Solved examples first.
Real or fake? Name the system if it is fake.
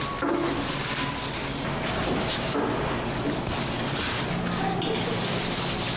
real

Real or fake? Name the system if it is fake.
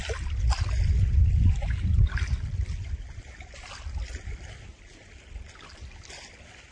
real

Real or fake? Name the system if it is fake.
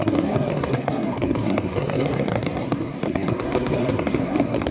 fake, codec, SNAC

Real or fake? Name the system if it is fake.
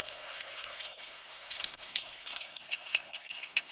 fake, codec, SNAC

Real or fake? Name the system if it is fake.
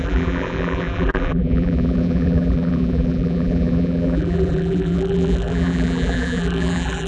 fake, vocoder, BigVGAN v2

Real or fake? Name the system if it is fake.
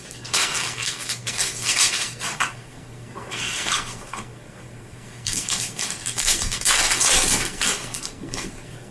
fake, codec, SNAC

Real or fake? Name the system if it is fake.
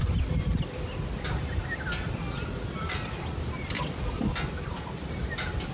real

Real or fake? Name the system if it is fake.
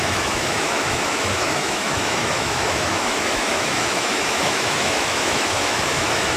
fake, autoencoder, DAC-VAE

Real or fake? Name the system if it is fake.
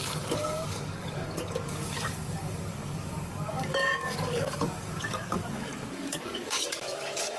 fake, codec, DAC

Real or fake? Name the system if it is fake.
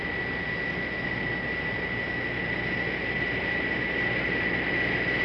real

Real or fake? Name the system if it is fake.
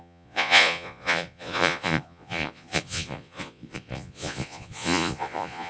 fake, vocoder, Vocos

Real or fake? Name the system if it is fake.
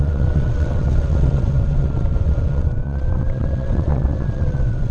fake, vocoder, WaveNeXt